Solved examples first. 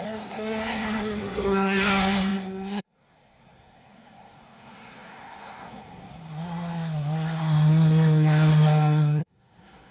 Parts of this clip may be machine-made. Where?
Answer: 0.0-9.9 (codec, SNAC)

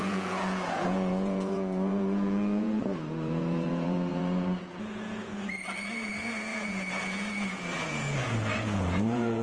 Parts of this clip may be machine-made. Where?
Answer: 0.0-9.4 (vocoder, Vocos)

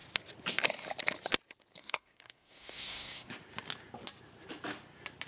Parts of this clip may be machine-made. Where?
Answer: 1.8-3.3 (codec, SNAC)

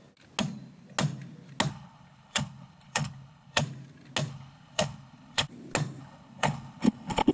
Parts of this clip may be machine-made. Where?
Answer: 1.7-3.6 (codec, HILCodec); 4.3-5.5; 6.0-7.3